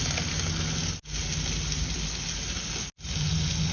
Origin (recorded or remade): recorded